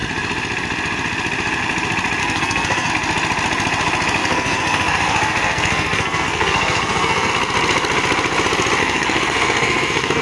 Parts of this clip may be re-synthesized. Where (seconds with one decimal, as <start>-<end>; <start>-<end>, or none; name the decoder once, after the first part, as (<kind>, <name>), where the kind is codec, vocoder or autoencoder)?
2.2-2.9 (codec, SNAC); 4.2-7.3; 8.8-10.2